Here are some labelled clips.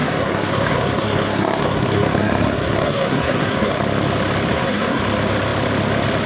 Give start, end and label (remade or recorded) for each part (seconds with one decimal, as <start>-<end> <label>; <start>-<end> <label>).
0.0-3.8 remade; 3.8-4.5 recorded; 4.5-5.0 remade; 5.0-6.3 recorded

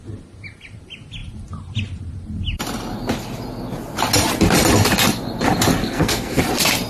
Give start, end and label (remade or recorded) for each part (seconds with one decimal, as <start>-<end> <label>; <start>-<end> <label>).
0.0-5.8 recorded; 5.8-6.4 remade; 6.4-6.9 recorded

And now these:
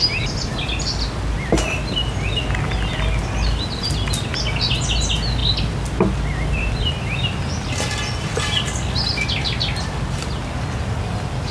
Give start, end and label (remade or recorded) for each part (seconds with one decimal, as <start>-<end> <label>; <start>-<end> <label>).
0.0-11.5 recorded

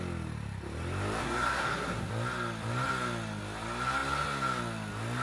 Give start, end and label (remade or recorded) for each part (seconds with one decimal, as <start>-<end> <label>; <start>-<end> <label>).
0.0-1.2 recorded; 1.2-2.1 remade; 2.1-5.2 recorded

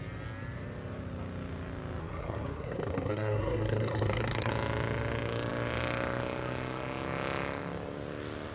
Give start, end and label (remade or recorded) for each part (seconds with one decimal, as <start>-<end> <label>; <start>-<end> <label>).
0.0-2.0 recorded; 2.0-4.5 remade; 4.5-8.5 recorded

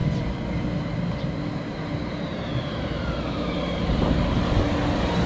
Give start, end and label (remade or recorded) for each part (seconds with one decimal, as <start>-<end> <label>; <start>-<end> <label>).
0.0-5.3 recorded

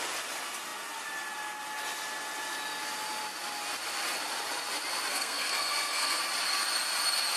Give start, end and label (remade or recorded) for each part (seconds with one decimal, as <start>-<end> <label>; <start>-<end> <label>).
0.0-5.1 recorded; 5.1-6.2 remade; 6.2-7.4 recorded

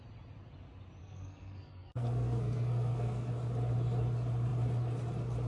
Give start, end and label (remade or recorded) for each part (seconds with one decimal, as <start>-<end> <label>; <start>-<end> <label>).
0.0-1.0 recorded; 1.0-3.3 remade; 3.3-5.5 recorded